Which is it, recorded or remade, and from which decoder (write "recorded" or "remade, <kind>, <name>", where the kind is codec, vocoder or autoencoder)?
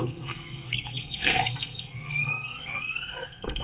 remade, codec, SNAC